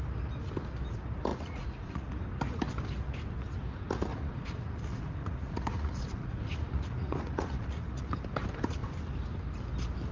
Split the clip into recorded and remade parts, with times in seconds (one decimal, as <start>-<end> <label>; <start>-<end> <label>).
0.0-1.3 recorded; 1.3-2.1 remade; 2.1-4.1 recorded; 4.1-8.2 remade; 8.2-10.1 recorded